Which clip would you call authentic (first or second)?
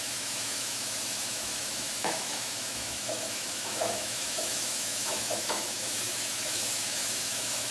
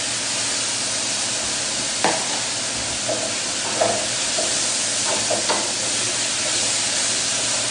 second